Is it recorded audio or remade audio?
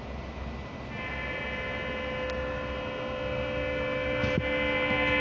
recorded